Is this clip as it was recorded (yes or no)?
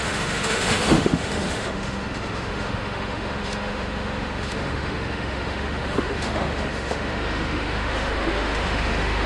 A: no